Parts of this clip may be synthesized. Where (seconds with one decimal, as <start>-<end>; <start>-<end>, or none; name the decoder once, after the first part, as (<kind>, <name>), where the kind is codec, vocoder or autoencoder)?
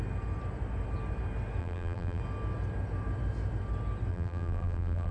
1.6-2.2 (vocoder, BigVGAN v2); 4.1-5.1